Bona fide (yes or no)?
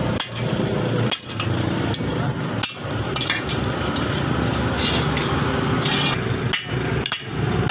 yes